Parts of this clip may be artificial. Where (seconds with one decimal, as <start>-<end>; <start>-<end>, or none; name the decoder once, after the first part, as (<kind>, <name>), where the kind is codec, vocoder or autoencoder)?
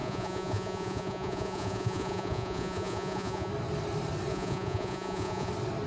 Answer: 0.0-3.5 (vocoder, Vocos); 4.3-5.5